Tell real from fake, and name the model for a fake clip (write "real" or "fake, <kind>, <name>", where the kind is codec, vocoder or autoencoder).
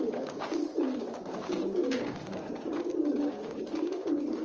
fake, codec, DAC